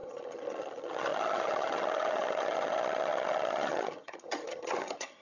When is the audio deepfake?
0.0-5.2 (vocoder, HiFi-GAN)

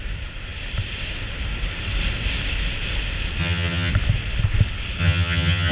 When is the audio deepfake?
3.4-3.9 (vocoder, HiFi-GAN); 5.0-5.7